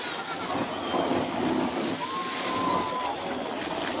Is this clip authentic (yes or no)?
yes